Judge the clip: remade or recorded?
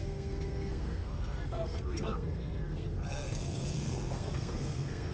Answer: remade